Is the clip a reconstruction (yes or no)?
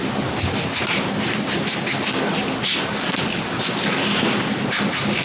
no